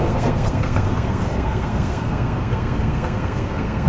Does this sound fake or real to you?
fake